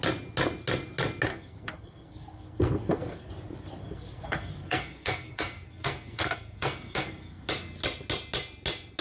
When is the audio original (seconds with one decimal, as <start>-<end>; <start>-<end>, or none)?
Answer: 0.0-1.3; 3.3-3.8; 7.5-9.0